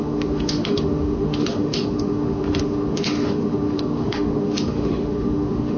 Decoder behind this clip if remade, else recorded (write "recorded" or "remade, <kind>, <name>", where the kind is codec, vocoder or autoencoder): remade, autoencoder, DAC-VAE